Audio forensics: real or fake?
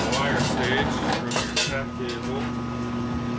real